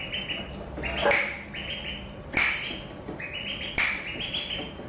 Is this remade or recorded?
recorded